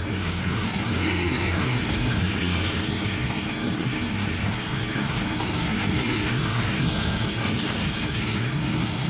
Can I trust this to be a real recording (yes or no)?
no